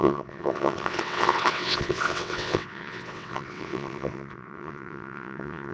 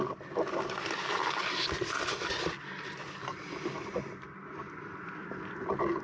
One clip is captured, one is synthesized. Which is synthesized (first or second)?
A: first